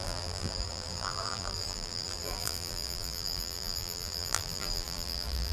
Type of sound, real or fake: fake